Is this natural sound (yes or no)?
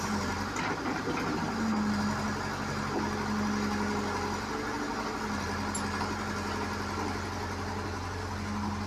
yes